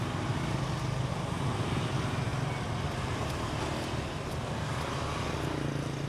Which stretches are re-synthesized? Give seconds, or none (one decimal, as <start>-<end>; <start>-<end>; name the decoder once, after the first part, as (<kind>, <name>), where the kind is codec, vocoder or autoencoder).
none